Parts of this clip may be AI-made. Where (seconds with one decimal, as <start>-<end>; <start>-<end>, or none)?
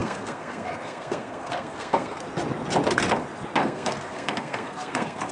0.0-2.2; 3.6-5.3